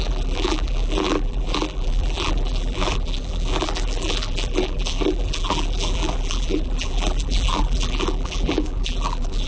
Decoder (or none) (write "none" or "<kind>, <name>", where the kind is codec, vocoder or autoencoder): vocoder, BigVGAN v2